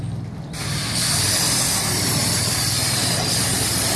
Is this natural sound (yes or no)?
yes